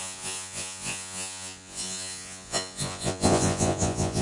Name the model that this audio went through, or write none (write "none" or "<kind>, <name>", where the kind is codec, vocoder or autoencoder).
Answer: vocoder, Vocos